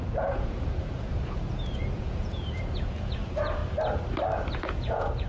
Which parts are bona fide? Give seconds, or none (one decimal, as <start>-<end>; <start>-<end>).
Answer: 3.6-4.6